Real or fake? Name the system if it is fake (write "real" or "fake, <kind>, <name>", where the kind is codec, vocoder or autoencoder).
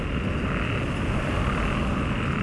real